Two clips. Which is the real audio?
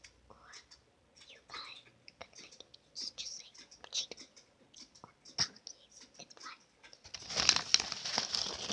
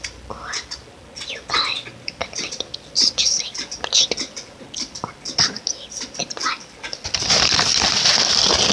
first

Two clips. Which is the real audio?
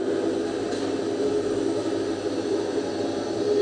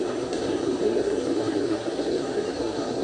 first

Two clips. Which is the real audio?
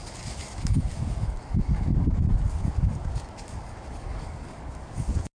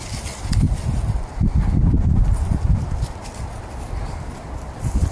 second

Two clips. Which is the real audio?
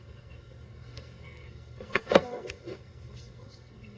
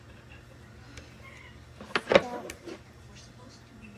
second